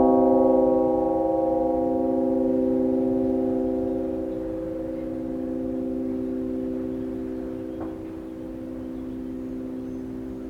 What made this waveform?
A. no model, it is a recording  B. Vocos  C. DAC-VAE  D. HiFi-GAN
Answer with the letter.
A